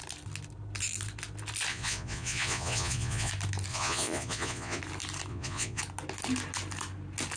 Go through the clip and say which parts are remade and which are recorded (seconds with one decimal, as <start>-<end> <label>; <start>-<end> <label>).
0.0-1.7 recorded; 1.7-3.3 remade; 3.3-3.7 recorded; 3.7-4.8 remade; 4.8-5.3 recorded; 5.3-5.8 remade; 5.8-7.4 recorded

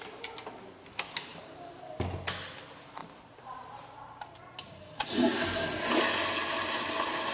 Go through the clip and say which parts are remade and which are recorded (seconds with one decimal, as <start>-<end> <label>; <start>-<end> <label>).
0.0-1.3 recorded; 1.3-1.9 remade; 1.9-3.0 recorded; 3.0-4.4 remade; 4.4-7.3 recorded

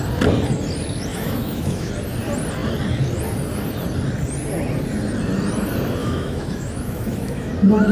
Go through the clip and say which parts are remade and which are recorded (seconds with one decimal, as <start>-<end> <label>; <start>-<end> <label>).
0.0-1.1 recorded; 1.1-1.9 remade; 1.9-6.0 recorded; 6.0-7.5 remade; 7.5-7.9 recorded

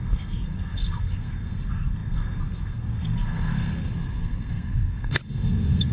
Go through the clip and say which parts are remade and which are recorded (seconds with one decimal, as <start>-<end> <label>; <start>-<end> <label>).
0.0-5.9 remade

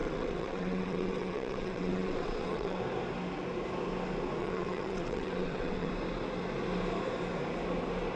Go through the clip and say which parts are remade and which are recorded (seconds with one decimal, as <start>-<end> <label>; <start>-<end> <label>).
0.0-2.8 remade; 2.8-4.4 recorded; 4.4-5.9 remade; 5.9-8.2 recorded

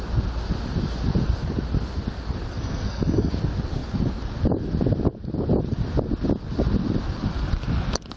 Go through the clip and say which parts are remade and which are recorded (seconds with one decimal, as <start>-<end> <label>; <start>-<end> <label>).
0.0-2.5 recorded; 2.5-3.3 remade; 3.3-8.2 recorded